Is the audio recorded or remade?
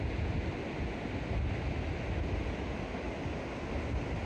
recorded